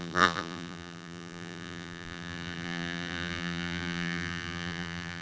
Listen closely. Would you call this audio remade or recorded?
remade